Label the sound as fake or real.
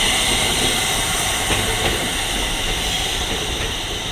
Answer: real